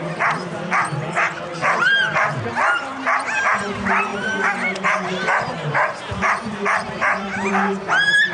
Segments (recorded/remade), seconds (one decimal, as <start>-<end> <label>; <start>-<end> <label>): 0.0-1.5 recorded; 1.5-2.5 remade; 2.5-4.1 recorded; 4.1-7.5 remade; 7.5-8.3 recorded